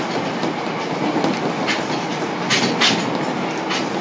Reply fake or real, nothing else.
real